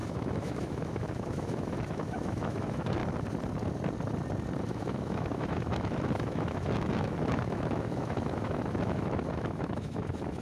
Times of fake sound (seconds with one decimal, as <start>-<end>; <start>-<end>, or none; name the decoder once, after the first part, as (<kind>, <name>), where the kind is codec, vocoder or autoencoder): 0.0-3.0 (autoencoder, DAC-VAE); 4.6-10.4

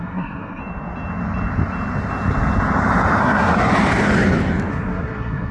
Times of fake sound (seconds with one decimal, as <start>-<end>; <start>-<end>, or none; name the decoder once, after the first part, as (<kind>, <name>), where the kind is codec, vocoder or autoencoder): 0.0-0.6 (codec, SNAC); 3.2-3.7; 4.7-5.5